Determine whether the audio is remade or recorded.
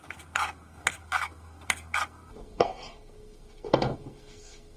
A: remade